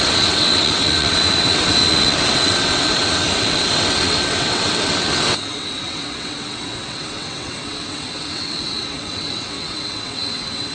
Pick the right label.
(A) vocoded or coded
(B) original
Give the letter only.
A